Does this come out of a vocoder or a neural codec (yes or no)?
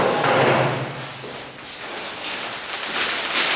no